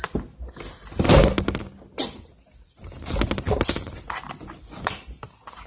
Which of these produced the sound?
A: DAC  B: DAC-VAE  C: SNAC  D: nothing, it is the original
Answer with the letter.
D